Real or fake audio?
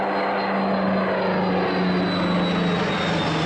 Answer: real